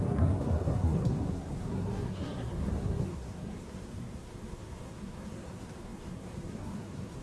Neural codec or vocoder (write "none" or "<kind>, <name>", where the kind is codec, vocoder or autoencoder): codec, SNAC